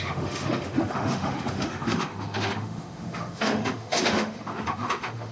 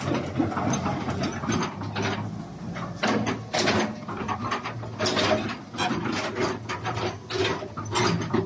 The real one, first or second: second